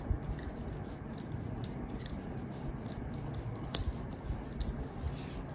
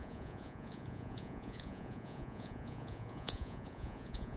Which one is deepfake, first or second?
second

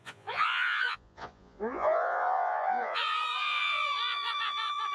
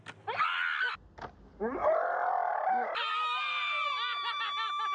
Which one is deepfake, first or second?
first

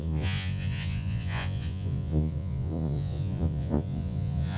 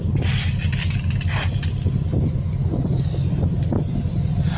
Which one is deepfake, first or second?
first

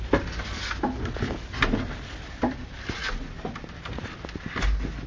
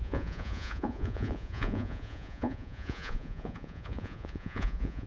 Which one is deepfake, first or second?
second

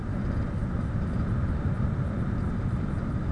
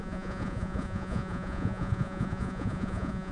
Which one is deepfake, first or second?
second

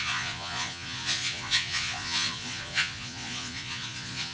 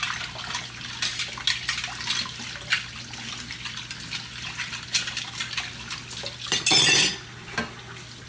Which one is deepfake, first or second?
first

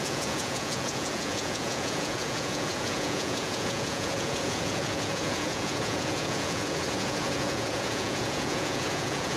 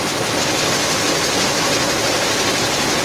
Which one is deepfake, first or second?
first